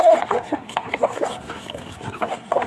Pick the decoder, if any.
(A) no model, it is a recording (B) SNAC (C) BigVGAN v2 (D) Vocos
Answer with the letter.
B